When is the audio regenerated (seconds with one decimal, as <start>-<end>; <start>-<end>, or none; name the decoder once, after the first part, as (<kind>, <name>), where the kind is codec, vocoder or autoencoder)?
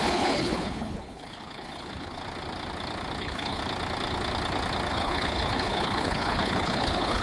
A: 0.0-2.2 (codec, HILCodec); 3.2-3.6; 4.9-7.2